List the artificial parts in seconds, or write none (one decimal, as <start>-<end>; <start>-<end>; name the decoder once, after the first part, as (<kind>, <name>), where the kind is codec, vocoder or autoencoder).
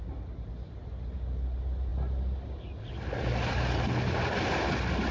none